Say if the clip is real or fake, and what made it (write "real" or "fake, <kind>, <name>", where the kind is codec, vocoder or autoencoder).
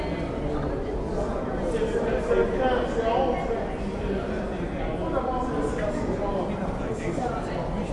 real